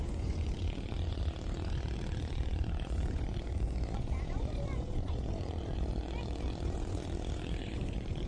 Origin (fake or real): fake